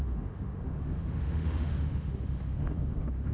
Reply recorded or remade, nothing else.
remade